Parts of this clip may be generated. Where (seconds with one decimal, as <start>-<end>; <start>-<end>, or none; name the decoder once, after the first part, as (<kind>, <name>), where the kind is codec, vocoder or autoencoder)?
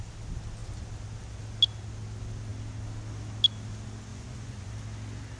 4.1-4.7 (vocoder, Vocos)